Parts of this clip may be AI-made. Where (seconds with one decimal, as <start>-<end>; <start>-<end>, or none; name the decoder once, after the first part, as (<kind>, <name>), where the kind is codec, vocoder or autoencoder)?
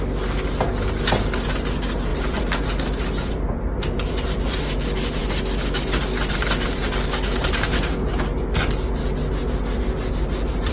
2.1-4.6 (vocoder, BigVGAN v2)